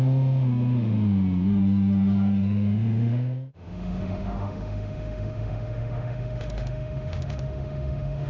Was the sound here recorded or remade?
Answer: remade